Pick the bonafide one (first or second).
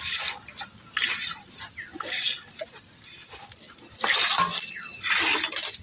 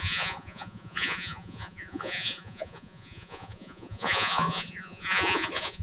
first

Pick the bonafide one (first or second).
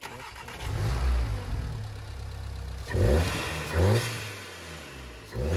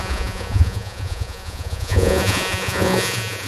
first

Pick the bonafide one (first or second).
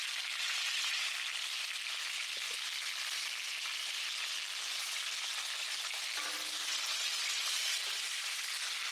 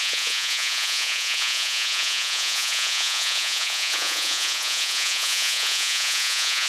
first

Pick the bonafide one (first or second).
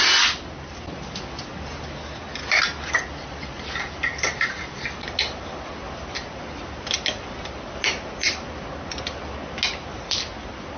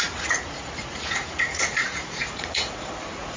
first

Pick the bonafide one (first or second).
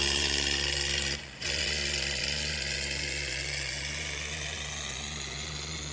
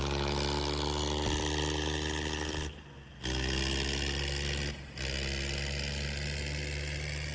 second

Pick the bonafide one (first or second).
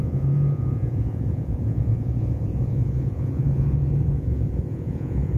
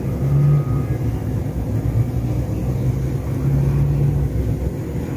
second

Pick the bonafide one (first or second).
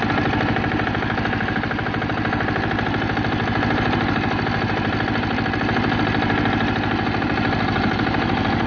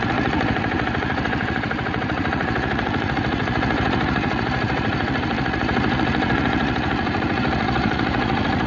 first